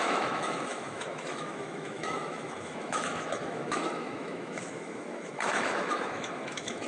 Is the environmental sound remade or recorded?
remade